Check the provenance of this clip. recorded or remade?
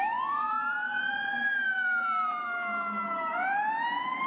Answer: remade